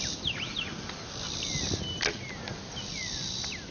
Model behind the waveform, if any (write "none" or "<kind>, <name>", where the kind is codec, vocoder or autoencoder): none